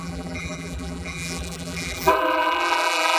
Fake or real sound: fake